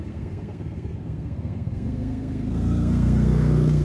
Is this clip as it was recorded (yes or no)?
no